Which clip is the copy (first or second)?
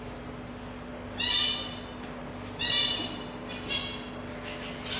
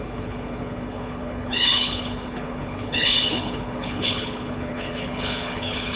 second